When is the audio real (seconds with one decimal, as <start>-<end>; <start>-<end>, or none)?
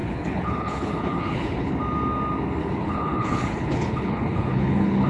1.7-2.6